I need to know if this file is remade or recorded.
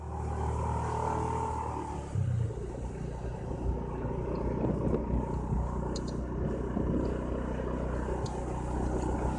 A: recorded